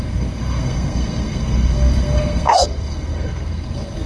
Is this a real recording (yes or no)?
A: no